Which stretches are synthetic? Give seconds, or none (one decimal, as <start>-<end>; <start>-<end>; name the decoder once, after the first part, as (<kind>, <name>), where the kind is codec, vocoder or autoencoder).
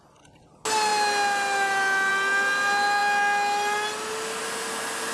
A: none